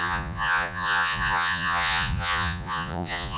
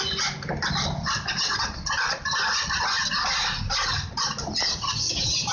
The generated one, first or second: first